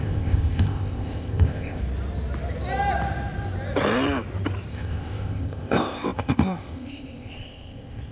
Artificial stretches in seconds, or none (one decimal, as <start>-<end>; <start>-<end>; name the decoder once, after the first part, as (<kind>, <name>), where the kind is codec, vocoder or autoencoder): 0.0-1.8 (codec, ZipCodec); 4.7-8.1